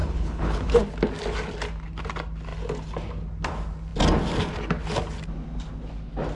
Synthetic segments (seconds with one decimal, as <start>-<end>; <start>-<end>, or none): 0.0-0.7